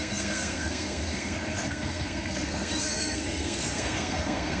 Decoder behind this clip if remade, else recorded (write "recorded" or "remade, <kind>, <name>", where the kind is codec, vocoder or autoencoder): remade, codec, SNAC